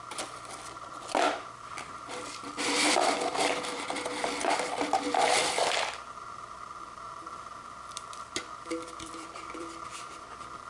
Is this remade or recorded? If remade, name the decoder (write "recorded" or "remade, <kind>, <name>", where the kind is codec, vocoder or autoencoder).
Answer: remade, vocoder, BigVGAN v2